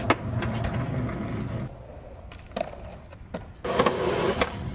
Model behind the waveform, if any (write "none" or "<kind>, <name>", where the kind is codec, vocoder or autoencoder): none